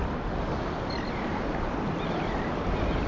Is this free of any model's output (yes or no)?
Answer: yes